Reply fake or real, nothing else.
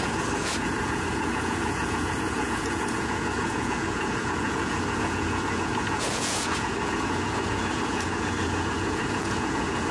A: fake